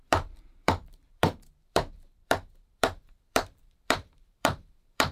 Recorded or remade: remade